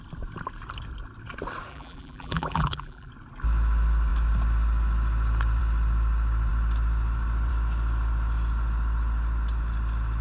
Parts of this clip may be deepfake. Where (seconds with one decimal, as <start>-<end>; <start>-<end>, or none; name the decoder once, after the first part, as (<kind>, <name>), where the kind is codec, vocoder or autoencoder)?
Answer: 1.7-3.1 (vocoder, BigVGAN v2)